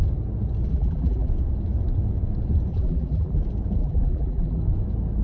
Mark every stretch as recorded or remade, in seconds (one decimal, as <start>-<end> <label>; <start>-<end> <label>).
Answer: 0.0-0.7 recorded; 0.7-1.3 remade; 1.3-2.7 recorded; 2.7-3.4 remade; 3.4-3.8 recorded; 3.8-4.6 remade; 4.6-5.2 recorded